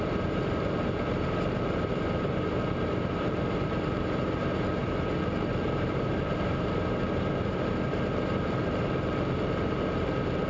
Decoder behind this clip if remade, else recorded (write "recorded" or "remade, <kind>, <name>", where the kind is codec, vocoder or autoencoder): remade, vocoder, BigVGAN v2